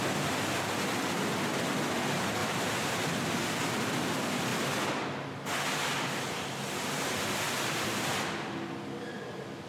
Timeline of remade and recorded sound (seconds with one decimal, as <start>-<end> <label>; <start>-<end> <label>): 0.0-2.4 recorded; 2.4-3.7 remade; 3.7-9.7 recorded